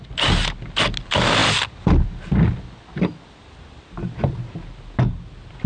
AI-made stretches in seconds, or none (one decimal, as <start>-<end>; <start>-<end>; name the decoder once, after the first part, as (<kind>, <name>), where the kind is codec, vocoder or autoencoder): none